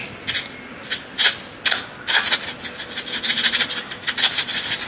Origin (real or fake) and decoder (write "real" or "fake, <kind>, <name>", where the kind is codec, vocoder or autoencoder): real